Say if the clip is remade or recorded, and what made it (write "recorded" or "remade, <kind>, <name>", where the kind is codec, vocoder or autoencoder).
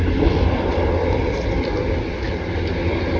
recorded